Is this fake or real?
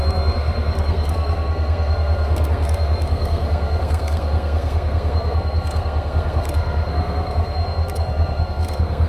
fake